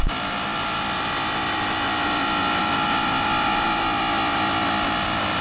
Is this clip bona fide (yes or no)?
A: no